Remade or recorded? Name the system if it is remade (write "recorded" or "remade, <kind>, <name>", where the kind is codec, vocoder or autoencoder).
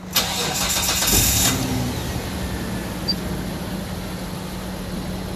recorded